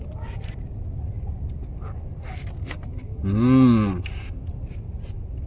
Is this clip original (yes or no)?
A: yes